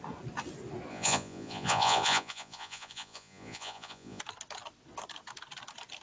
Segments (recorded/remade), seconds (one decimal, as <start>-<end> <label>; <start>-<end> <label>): 0.0-0.9 recorded; 0.9-4.2 remade; 4.2-6.0 recorded